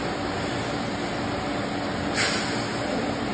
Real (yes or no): yes